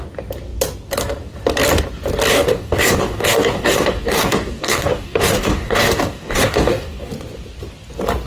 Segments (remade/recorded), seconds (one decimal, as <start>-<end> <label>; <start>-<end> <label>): 0.0-2.3 recorded; 2.3-7.1 remade; 7.1-8.3 recorded